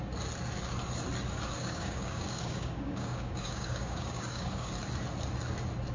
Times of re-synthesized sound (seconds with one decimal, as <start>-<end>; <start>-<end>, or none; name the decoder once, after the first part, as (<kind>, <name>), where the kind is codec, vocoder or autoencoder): 1.6-4.7 (codec, DAC)

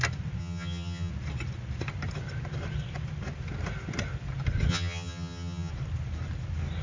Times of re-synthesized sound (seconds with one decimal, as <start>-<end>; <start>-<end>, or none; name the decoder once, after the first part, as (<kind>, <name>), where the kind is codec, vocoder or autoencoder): 0.4-1.1 (vocoder, HiFi-GAN); 4.7-5.7

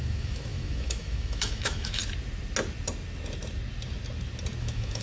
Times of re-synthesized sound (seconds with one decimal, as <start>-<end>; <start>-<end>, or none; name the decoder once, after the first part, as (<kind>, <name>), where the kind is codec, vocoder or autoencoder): 0.0-2.0 (autoencoder, DAC-VAE); 4.6-5.0

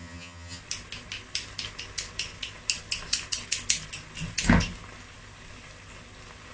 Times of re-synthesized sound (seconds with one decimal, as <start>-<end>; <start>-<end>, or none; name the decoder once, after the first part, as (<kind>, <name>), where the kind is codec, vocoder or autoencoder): 0.0-0.6 (vocoder, HiFi-GAN)

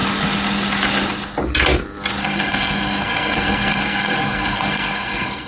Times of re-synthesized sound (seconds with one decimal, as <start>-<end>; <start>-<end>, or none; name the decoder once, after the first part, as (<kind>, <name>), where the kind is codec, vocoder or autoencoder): 2.2-5.5 (codec, SNAC)